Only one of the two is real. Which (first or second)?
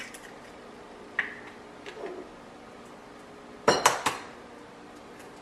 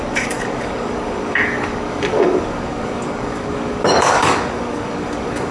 first